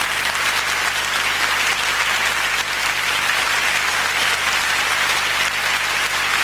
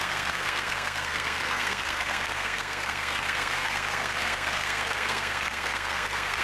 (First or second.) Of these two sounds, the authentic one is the first